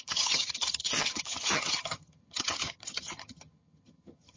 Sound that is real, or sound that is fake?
fake